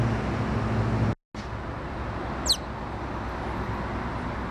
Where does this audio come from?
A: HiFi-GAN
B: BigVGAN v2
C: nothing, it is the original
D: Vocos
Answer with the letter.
C